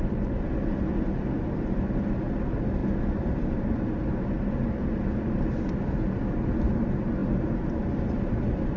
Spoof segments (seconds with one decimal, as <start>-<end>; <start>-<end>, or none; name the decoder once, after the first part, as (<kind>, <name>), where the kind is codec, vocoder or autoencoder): none